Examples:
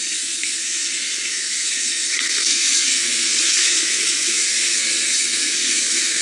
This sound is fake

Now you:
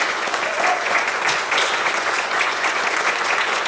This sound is fake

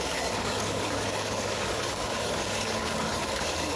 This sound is fake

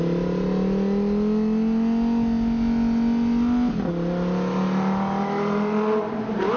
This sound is real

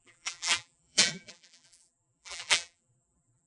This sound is fake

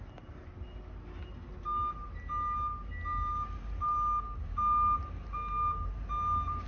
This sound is real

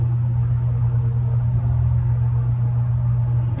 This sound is real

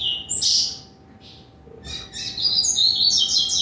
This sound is real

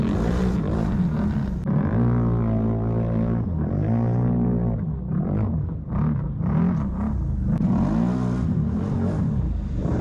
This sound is real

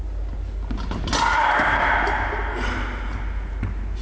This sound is real